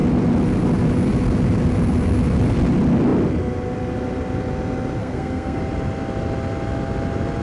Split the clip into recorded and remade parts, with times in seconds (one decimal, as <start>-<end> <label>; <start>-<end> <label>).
0.0-5.0 recorded; 5.0-5.6 remade; 5.6-7.4 recorded